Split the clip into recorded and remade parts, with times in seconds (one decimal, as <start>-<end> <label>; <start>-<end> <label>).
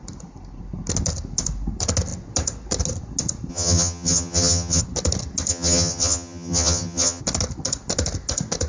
0.0-3.5 recorded; 3.5-4.8 remade; 4.8-5.5 recorded; 5.5-7.2 remade; 7.2-8.7 recorded